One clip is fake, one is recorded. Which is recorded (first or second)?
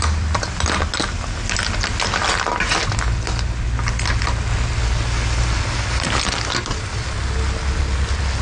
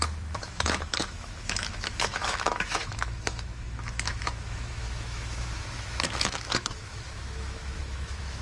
first